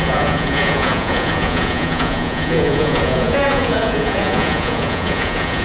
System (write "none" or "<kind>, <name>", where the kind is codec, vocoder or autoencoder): vocoder, Vocos